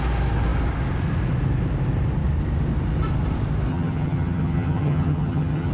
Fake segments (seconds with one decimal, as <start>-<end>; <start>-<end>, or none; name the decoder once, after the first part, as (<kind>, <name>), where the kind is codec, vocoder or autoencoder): 3.7-5.7 (vocoder, HiFi-GAN)